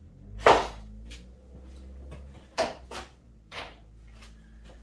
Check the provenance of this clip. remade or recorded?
recorded